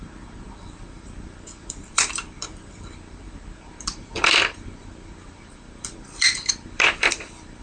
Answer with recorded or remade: remade